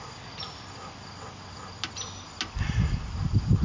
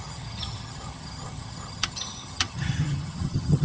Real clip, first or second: first